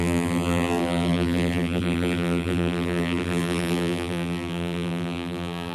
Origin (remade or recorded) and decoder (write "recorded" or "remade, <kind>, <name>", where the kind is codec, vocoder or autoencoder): remade, vocoder, BigVGAN v2